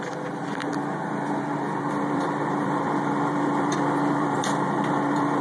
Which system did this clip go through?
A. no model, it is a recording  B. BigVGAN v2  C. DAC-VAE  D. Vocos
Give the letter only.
B